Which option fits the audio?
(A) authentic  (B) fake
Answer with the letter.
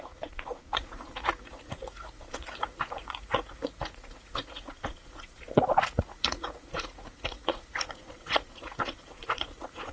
B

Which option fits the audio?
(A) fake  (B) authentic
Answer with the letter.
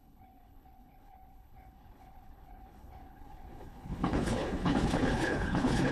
A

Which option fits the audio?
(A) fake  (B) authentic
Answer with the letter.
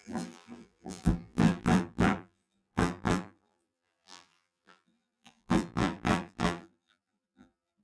A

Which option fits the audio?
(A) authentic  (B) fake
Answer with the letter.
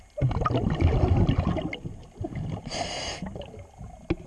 A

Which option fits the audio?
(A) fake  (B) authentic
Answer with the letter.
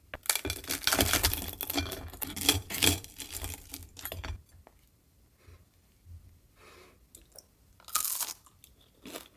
B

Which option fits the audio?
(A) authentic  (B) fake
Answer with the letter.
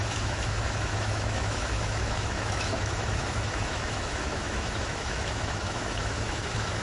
B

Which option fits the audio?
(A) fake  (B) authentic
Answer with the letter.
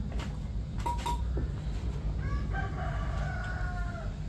B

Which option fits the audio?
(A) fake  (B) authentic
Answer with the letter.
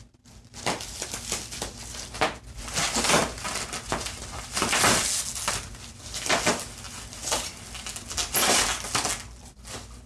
B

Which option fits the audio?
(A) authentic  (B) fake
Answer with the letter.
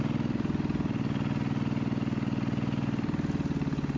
A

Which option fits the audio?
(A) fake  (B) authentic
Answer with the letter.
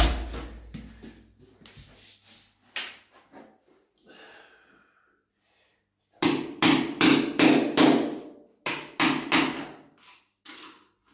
B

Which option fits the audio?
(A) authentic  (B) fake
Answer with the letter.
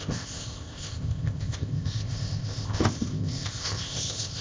B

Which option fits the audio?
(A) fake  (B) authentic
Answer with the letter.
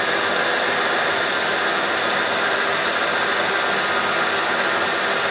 B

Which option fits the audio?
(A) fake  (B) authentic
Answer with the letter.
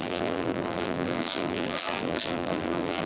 A